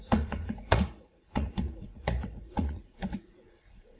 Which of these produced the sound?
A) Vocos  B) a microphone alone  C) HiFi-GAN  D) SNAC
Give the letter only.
A